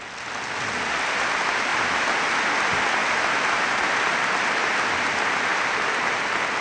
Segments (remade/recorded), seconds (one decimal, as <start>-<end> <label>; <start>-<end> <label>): 0.0-1.7 recorded; 1.7-2.4 remade; 2.4-3.0 recorded; 3.0-3.9 remade; 3.9-5.5 recorded; 5.5-6.0 remade; 6.0-6.6 recorded